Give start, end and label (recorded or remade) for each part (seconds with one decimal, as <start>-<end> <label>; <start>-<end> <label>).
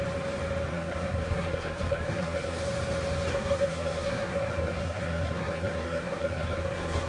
0.0-0.7 recorded; 0.7-2.6 remade; 2.6-3.3 recorded; 3.3-7.1 remade